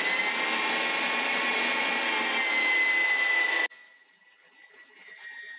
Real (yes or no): yes